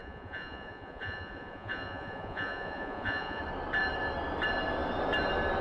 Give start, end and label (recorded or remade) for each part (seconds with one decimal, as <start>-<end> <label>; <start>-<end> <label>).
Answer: 0.0-3.4 remade; 3.4-5.6 recorded